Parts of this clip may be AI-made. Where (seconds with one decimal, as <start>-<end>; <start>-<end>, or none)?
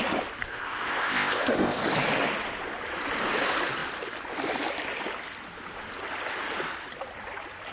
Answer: 0.5-1.8